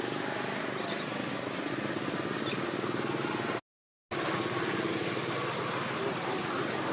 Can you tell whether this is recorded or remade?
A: recorded